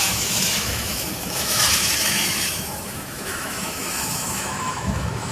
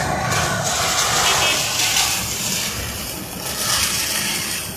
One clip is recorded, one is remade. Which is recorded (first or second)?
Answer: second